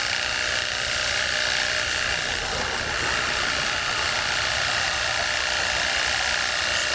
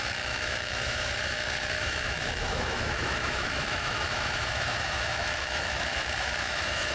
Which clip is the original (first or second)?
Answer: first